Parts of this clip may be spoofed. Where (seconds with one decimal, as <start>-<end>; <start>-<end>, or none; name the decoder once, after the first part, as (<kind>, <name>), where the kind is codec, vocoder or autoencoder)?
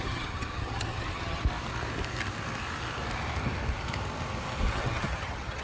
0.0-1.4 (vocoder, HiFi-GAN); 4.7-5.6